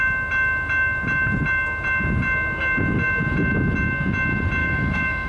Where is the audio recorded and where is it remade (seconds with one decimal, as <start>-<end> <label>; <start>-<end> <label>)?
0.0-4.6 recorded; 4.6-5.3 remade